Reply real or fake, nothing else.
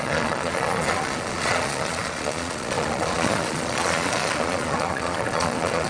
fake